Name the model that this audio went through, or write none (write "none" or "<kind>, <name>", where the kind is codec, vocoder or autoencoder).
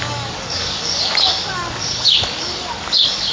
codec, DAC